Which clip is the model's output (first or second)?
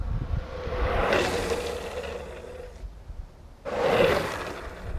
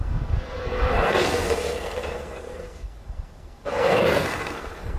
second